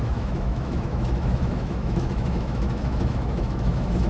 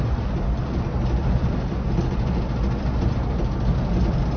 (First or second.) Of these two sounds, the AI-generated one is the first